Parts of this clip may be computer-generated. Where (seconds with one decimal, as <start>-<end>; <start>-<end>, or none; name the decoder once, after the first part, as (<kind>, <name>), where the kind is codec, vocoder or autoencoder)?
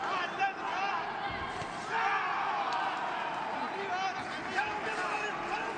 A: none